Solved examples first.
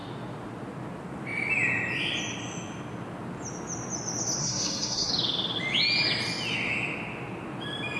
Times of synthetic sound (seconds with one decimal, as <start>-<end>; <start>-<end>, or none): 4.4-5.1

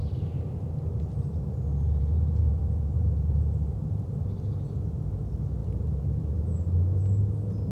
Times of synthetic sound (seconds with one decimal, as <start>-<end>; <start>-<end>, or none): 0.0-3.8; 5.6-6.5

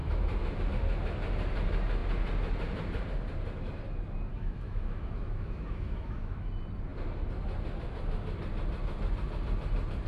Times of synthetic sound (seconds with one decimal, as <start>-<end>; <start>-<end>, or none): 0.0-0.6; 4.3-6.5

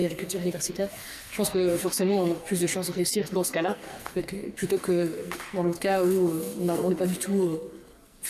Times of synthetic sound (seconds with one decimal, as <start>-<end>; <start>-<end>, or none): 0.0-8.3

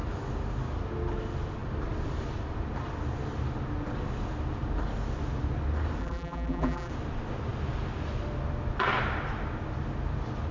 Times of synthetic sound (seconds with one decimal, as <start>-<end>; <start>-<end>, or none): 6.0-6.9

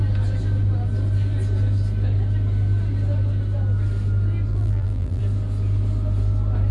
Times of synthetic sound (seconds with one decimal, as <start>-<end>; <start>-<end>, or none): 4.5-5.2